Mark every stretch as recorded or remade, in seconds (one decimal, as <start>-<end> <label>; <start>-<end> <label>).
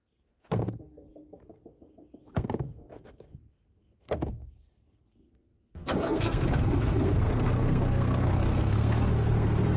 0.0-9.8 remade